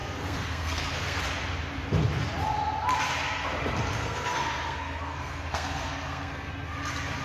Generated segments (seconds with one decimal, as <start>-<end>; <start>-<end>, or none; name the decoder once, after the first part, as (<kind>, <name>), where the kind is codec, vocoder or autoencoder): 0.0-1.2 (codec, SNAC); 3.9-6.5